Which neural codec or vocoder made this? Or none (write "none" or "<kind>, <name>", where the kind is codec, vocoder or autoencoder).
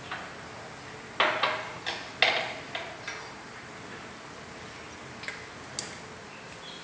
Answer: none